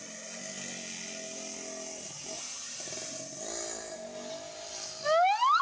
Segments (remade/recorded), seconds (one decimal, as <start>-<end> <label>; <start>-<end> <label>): 0.0-5.6 recorded